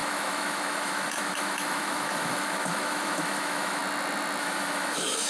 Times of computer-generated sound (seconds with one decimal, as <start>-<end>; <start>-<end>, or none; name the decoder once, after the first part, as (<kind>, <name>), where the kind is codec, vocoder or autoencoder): 0.0-3.8 (autoencoder, DAC-VAE); 4.4-5.3